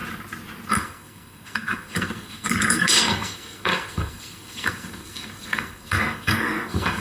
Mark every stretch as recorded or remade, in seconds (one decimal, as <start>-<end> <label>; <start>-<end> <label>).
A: 0.0-0.7 recorded; 0.7-7.0 remade